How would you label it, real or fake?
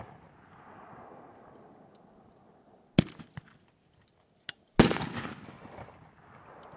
real